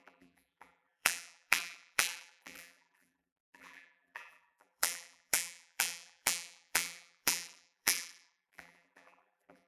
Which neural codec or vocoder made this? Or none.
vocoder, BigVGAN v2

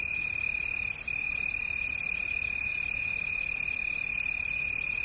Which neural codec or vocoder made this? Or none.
none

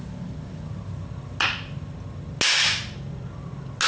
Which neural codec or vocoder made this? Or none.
none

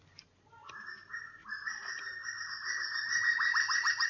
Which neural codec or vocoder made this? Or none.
none